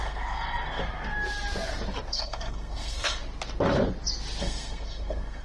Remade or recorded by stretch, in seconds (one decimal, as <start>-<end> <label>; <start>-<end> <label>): 0.0-0.8 remade; 0.8-2.1 recorded; 2.1-3.2 remade; 3.2-4.4 recorded; 4.4-5.4 remade